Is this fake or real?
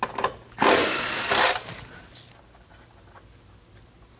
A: real